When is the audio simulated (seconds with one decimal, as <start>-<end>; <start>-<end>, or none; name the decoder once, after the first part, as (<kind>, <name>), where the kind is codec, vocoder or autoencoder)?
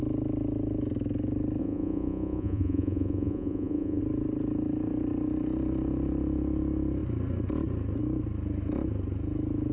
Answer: 1.6-4.0 (vocoder, Vocos)